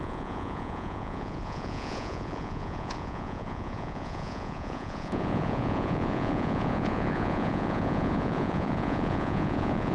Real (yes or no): no